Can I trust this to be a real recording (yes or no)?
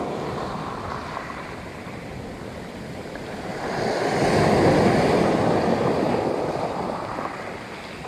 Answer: yes